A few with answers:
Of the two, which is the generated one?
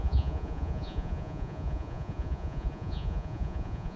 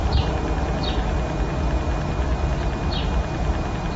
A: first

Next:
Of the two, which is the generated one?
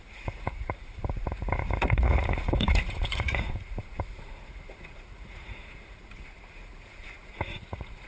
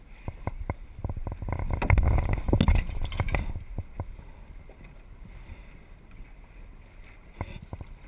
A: first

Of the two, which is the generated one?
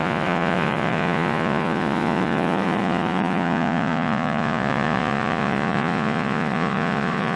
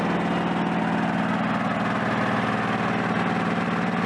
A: first